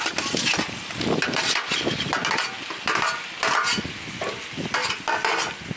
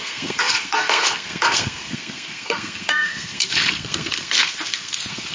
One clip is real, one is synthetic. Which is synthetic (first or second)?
second